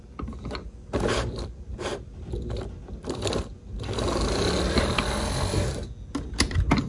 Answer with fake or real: real